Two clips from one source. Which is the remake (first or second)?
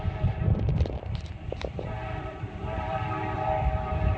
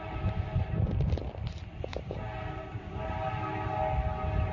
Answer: first